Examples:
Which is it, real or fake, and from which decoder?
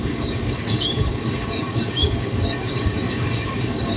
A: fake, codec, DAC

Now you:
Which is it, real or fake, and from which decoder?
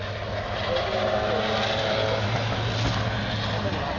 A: real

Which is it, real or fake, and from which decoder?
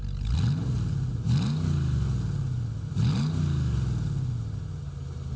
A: real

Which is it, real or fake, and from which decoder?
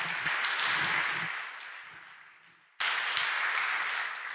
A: real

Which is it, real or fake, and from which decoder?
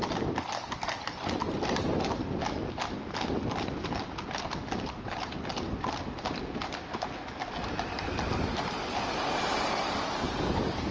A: real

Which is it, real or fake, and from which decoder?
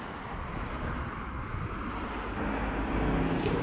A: real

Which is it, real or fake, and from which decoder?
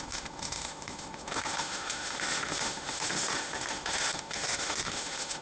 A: fake, autoencoder, DAC-VAE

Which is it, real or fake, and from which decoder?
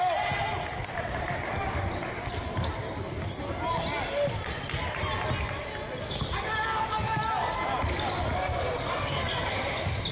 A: real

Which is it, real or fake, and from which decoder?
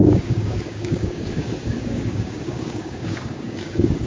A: fake, codec, DAC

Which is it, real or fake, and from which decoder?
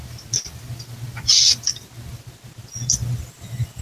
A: real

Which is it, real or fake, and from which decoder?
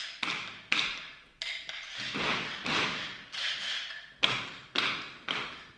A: real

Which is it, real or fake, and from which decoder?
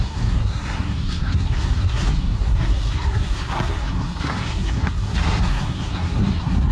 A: fake, codec, SNAC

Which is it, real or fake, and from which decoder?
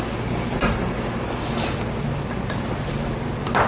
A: real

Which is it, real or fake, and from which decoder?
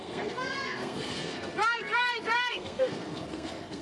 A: fake, codec, SNAC